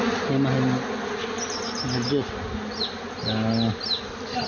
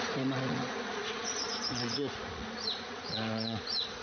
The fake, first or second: second